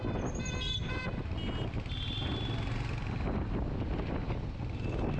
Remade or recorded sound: recorded